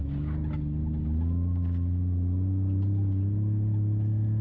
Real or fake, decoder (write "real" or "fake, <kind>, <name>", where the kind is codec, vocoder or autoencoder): real